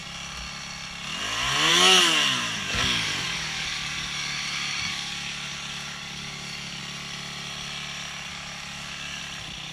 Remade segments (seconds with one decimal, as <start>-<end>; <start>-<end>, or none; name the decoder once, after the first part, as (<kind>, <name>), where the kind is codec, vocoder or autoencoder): 1.7-6.8 (codec, DAC); 8.3-9.2